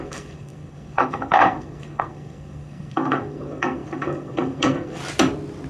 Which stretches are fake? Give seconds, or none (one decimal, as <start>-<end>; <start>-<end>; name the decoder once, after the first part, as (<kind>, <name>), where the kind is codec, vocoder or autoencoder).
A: 0.0-5.0 (codec, SNAC)